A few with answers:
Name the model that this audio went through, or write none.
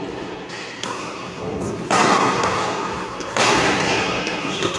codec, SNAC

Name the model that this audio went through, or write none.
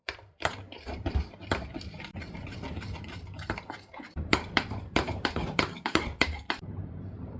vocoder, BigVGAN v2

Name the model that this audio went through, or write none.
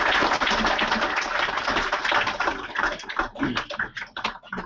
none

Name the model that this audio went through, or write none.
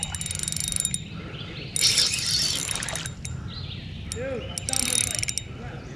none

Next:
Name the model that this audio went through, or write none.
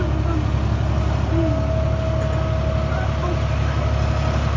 none